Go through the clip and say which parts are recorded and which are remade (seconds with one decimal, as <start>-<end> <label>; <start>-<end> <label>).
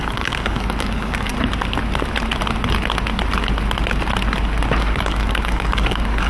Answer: 0.0-1.3 remade; 1.3-4.8 recorded; 4.8-6.3 remade